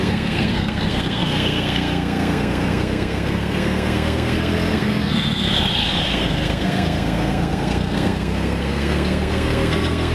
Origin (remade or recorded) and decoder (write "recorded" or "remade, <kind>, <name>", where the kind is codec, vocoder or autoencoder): remade, codec, SNAC